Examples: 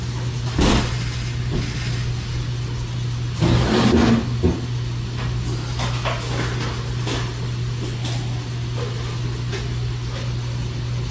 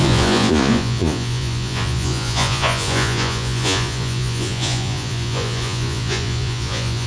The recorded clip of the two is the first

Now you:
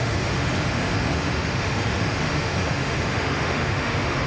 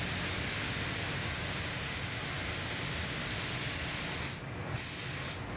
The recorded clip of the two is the second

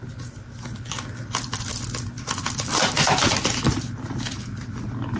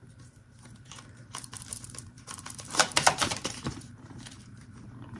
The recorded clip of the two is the first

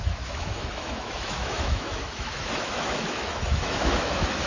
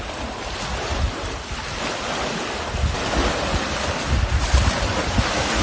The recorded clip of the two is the second